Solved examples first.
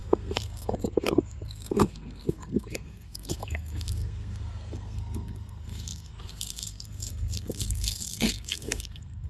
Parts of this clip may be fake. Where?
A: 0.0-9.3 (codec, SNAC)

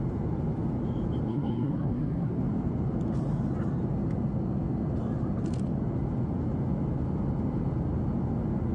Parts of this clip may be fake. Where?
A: 1.3-2.4 (codec, SNAC)

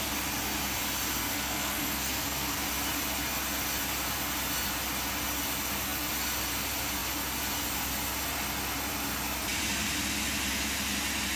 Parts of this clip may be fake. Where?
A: 1.2-2.6 (codec, SNAC)